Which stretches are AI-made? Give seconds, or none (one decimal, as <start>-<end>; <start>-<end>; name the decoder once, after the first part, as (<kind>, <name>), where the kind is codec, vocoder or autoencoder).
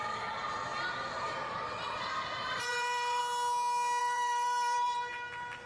2.4-3.2 (vocoder, BigVGAN v2); 4.0-5.1